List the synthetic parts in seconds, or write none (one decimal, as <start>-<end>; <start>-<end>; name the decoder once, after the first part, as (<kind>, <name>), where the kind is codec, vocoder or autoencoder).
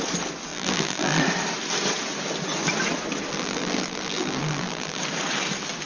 0.5-1.2 (vocoder, BigVGAN v2); 3.3-5.0